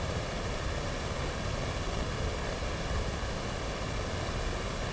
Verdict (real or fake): real